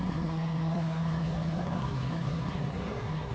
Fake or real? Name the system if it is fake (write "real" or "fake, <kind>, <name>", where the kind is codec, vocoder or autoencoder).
fake, codec, SNAC